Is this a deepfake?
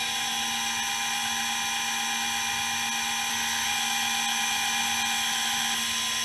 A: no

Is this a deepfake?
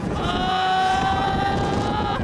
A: yes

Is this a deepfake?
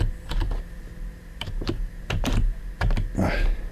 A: yes